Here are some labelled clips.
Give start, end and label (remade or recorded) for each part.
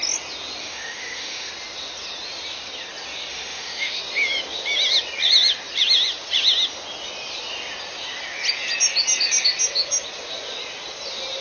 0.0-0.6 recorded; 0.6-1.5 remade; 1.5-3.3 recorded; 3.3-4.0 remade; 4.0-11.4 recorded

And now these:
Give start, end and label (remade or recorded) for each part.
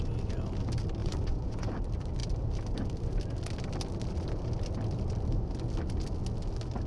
0.0-1.0 recorded; 1.0-1.7 remade; 1.7-6.9 recorded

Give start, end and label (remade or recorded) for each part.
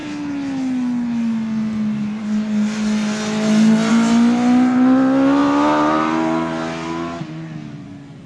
0.0-8.3 recorded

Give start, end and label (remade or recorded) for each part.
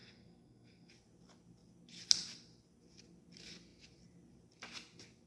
0.0-0.9 remade; 0.9-5.3 recorded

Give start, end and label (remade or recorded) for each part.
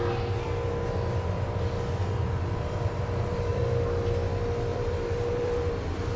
0.0-2.0 recorded; 2.0-3.6 remade; 3.6-4.7 recorded; 4.7-5.7 remade; 5.7-6.2 recorded